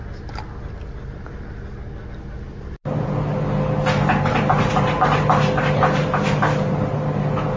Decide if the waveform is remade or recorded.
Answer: recorded